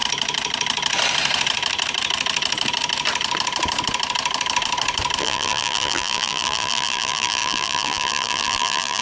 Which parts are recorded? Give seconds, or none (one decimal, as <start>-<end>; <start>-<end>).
0.0-5.2